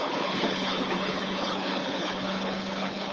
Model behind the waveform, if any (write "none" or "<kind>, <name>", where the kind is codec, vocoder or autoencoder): codec, HILCodec